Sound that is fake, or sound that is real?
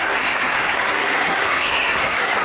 fake